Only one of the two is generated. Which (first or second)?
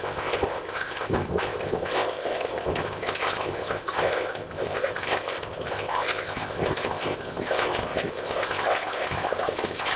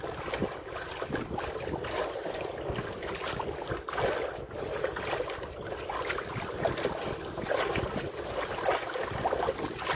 first